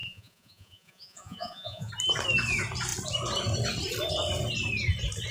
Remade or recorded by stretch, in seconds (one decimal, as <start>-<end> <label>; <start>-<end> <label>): 0.0-1.9 remade; 1.9-5.3 recorded